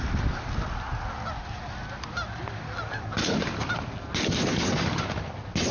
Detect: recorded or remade recorded